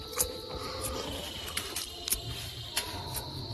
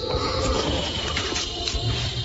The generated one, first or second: second